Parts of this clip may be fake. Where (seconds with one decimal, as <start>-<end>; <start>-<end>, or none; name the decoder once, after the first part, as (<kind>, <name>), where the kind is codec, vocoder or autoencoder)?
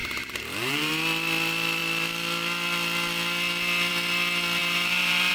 0.0-0.9 (vocoder, BigVGAN v2); 4.6-5.3